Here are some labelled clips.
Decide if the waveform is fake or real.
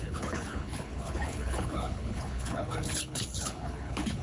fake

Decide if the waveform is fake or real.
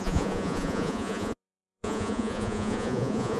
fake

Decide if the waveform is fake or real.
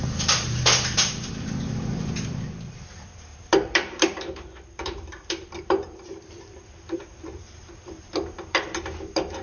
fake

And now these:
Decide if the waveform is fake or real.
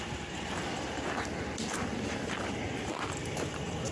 real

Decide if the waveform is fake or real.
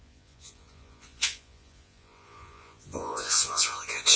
fake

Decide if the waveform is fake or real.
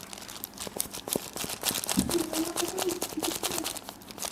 real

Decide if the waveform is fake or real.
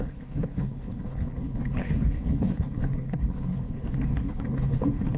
fake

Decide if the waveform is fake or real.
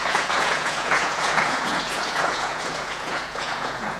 fake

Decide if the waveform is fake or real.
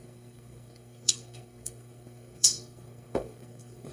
fake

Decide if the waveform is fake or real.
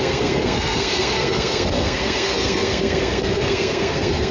fake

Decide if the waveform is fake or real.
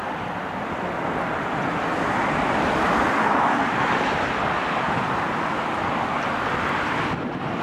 real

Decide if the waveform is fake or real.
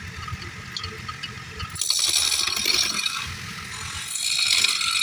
real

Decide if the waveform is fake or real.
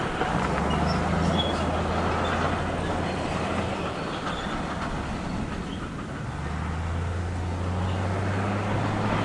real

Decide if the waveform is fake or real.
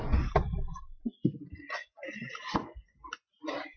real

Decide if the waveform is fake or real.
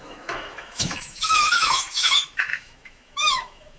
fake